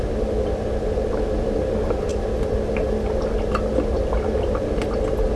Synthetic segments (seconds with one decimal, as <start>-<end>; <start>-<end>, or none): none